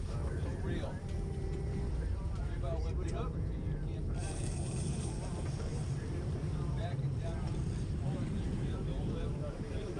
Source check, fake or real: fake